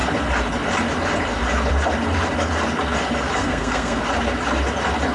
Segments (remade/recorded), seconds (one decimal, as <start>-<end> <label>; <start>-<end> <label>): 0.0-3.4 recorded; 3.4-4.0 remade; 4.0-5.1 recorded